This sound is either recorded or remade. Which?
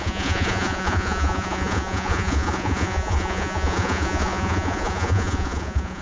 remade